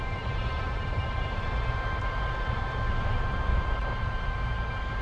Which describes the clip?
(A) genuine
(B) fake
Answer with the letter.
B